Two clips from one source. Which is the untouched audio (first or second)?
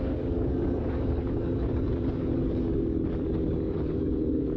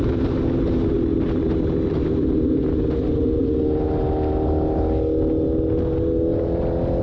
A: second